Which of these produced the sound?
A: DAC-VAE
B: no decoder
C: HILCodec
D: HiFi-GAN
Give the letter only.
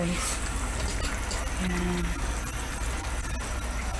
B